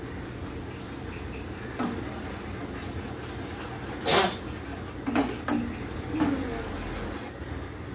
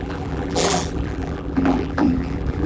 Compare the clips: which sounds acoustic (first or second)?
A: first